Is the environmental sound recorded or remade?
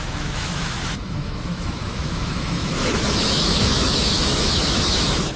remade